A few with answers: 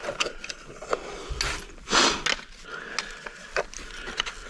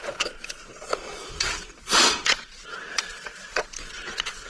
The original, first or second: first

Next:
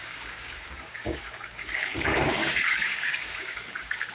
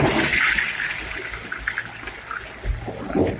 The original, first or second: second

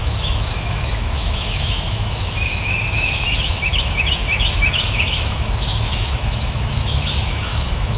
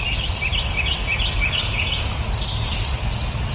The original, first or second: second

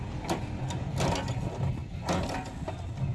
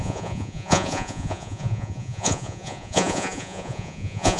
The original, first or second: first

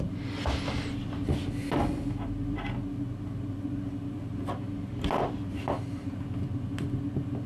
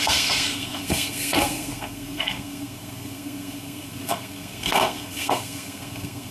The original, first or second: first